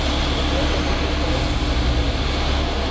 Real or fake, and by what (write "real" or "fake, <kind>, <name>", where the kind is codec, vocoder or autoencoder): real